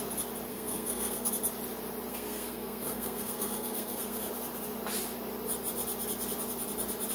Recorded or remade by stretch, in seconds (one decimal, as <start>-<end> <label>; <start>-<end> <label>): 0.0-0.5 recorded; 0.5-1.3 remade; 1.3-2.1 recorded; 2.1-4.3 remade; 4.3-7.1 recorded